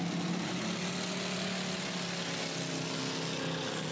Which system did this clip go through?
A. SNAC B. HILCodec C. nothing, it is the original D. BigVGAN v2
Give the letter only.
C